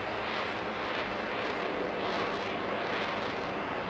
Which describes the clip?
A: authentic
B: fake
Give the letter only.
A